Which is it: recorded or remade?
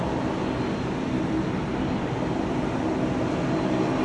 recorded